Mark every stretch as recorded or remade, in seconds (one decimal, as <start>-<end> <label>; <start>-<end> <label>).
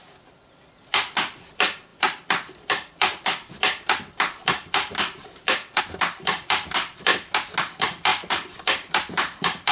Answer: 0.0-7.1 remade; 7.1-7.6 recorded; 7.6-9.7 remade